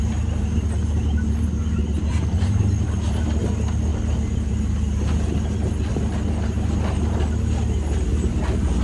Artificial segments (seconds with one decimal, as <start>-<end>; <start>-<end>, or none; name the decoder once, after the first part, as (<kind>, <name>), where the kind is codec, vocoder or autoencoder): 2.1-2.6 (vocoder, BigVGAN v2); 3.9-5.0; 8.1-8.8